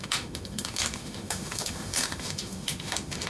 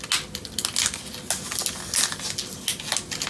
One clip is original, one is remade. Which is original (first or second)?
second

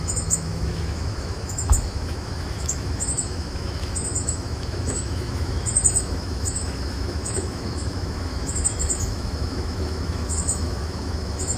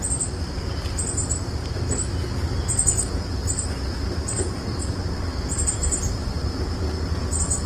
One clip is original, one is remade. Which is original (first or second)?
second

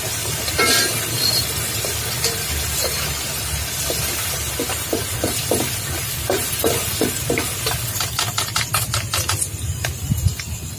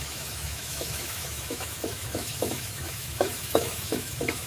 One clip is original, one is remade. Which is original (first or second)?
first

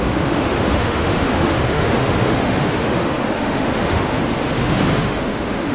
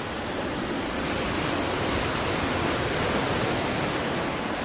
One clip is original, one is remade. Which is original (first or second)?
second